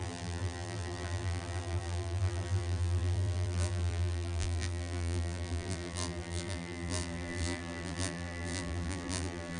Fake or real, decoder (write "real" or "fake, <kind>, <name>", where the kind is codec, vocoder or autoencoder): fake, vocoder, BigVGAN v2